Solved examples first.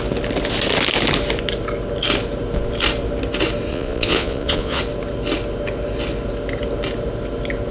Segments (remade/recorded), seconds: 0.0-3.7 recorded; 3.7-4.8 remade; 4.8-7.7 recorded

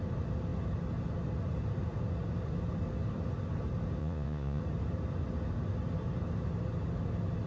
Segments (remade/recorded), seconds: 0.0-4.0 recorded; 4.0-4.6 remade; 4.6-7.5 recorded

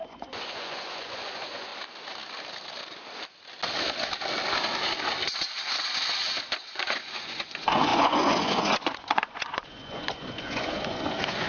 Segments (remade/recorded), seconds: 0.0-1.7 remade; 1.7-6.7 recorded; 6.7-11.5 remade

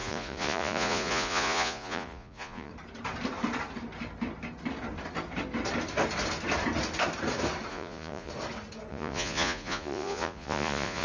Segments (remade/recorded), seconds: 0.0-2.7 remade; 2.7-7.7 recorded; 7.7-8.3 remade; 8.3-8.9 recorded; 8.9-11.0 remade

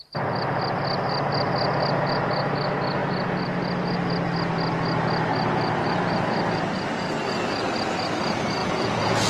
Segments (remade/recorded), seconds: 0.0-8.6 recorded; 8.6-9.3 remade

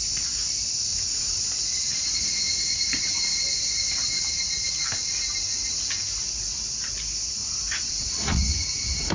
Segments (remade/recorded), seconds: 0.0-0.9 recorded; 0.9-1.4 remade; 1.4-7.4 recorded; 7.4-9.1 remade

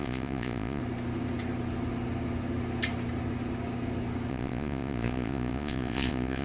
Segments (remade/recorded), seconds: 0.0-0.8 remade; 0.8-4.3 recorded; 4.3-6.4 remade